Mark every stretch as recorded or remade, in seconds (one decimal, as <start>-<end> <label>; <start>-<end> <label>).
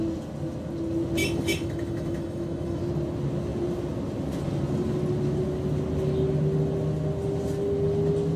0.0-1.2 recorded; 1.2-2.8 remade; 2.8-8.4 recorded